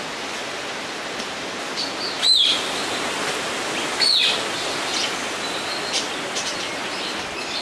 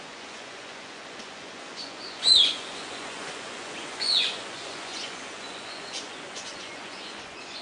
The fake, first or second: second